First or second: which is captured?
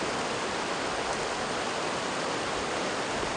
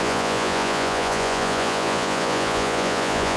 first